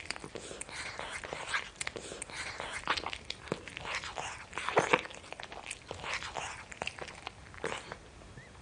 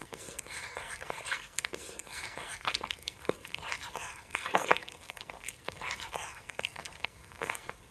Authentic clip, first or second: first